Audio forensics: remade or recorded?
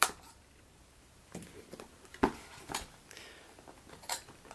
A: remade